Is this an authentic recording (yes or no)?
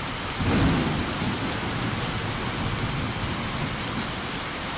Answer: yes